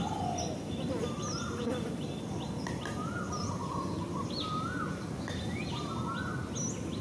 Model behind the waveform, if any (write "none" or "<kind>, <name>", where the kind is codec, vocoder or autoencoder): none